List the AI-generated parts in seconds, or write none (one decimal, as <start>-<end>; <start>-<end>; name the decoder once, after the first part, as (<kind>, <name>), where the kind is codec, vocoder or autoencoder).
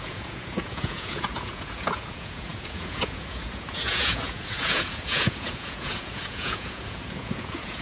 0.0-7.8 (vocoder, Vocos)